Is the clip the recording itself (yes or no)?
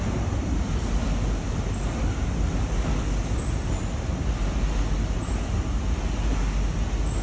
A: yes